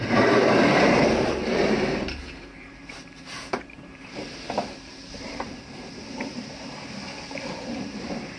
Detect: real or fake fake